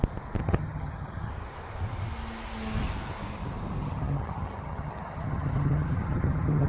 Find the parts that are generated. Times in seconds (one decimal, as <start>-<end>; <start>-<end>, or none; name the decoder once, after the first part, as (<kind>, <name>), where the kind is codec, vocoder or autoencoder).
0.4-1.3 (vocoder, HiFi-GAN); 3.8-6.7